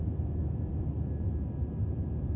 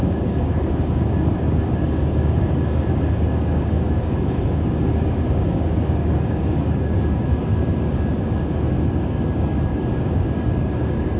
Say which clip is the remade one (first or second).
second